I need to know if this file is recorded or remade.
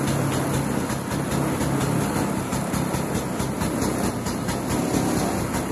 recorded